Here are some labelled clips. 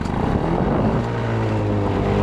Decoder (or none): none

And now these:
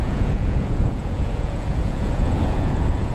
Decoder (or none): vocoder, Vocos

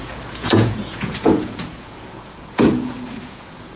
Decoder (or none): vocoder, Vocos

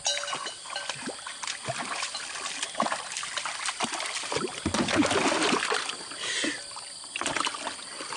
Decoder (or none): none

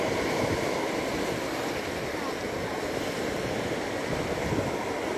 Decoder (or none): none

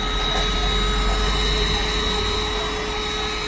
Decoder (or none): none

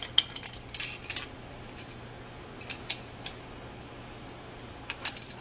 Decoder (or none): none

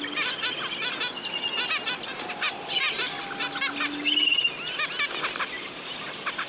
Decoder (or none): none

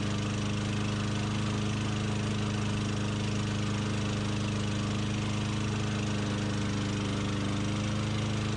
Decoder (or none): none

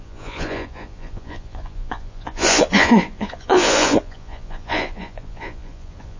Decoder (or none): vocoder, Vocos